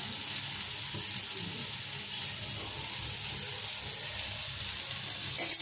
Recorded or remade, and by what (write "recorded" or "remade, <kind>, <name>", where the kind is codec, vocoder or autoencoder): recorded